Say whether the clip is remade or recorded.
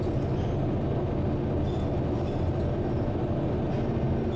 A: recorded